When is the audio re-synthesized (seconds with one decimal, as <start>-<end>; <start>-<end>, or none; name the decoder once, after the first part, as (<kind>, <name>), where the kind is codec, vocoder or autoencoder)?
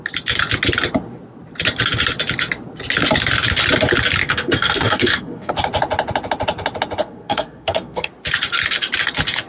4.2-5.5 (codec, SNAC); 7.0-8.1